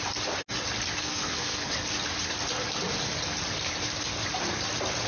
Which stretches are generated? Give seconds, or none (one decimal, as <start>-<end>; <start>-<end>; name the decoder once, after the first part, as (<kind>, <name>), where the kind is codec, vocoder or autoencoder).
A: 1.0-1.7 (codec, SNAC)